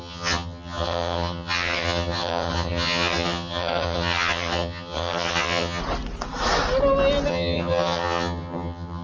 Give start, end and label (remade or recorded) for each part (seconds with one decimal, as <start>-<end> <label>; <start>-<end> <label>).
0.0-5.8 remade; 5.8-7.3 recorded; 7.3-9.0 remade